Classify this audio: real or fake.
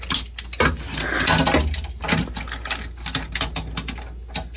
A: real